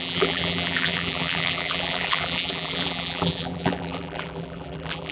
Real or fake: fake